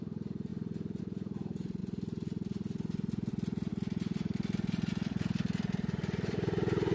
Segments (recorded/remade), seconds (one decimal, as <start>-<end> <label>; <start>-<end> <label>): 0.0-6.9 remade